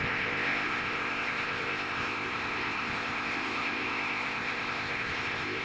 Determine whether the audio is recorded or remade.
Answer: remade